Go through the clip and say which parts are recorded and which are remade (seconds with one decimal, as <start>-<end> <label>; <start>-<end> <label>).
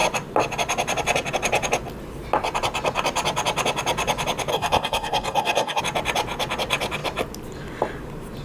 0.0-4.5 recorded; 4.5-5.8 remade; 5.8-8.4 recorded